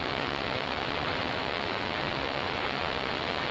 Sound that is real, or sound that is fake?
fake